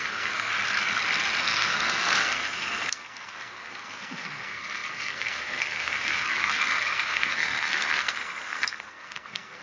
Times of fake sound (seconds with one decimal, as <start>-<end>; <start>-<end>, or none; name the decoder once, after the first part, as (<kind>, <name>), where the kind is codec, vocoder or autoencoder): 0.0-0.5 (codec, SNAC); 1.4-9.6